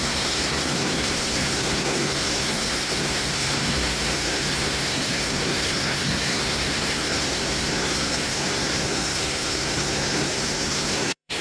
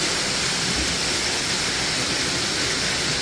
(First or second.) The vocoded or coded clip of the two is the first